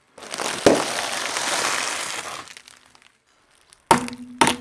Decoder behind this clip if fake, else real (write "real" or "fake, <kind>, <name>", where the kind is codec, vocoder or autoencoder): real